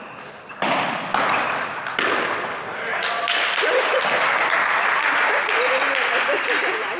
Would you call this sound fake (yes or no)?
no